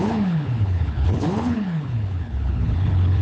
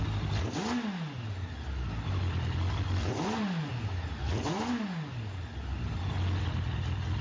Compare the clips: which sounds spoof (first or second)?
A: first